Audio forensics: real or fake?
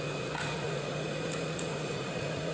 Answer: fake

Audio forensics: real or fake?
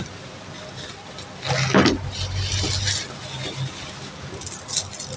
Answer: real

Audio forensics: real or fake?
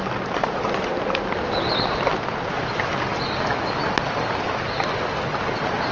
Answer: real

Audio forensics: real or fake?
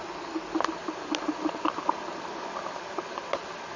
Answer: real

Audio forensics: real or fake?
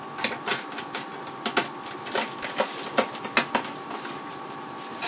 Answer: real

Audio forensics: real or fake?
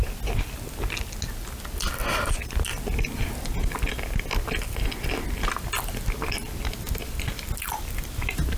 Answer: real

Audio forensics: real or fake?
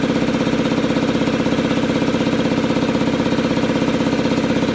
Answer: real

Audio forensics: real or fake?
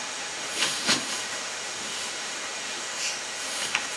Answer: fake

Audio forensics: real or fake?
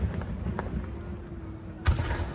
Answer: real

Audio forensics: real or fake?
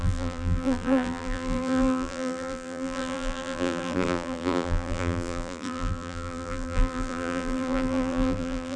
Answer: fake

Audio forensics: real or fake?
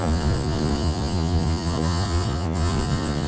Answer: fake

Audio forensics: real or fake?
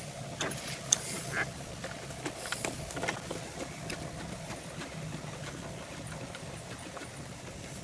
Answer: real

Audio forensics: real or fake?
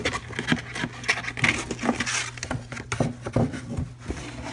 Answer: real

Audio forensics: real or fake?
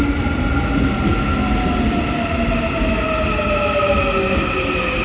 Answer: real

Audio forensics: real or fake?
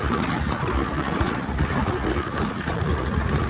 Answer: fake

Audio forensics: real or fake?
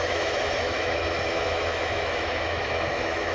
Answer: fake